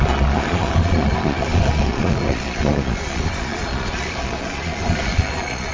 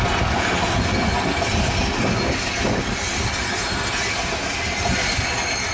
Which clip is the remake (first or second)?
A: first